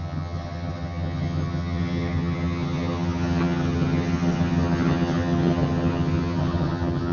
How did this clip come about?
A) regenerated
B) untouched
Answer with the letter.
A